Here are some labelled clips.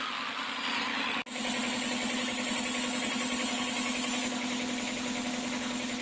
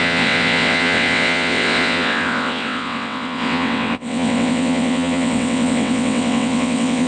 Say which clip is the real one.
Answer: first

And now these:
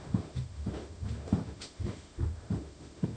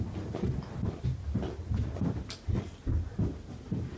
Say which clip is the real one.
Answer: second